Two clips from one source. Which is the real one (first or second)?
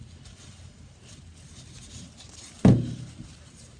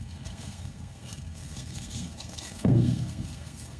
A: first